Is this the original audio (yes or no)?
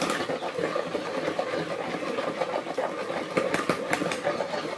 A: yes